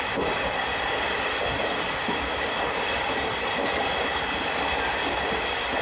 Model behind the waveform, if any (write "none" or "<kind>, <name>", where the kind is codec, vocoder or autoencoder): none